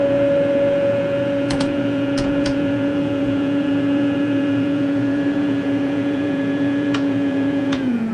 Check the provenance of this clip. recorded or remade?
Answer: remade